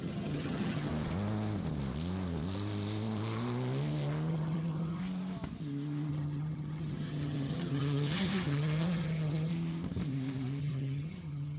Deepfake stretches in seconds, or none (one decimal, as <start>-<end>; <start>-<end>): 0.0-0.9; 4.3-5.0; 6.1-9.5; 10.6-11.6